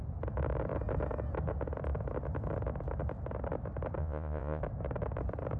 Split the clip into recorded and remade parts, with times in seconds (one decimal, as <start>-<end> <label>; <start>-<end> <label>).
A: 0.0-4.0 recorded; 4.0-4.6 remade; 4.6-5.6 recorded